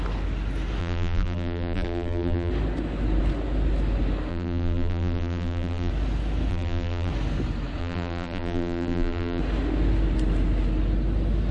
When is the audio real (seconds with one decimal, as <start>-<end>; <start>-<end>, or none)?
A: 0.0-0.8; 2.5-4.3; 5.9-6.5; 7.1-7.8; 9.4-11.5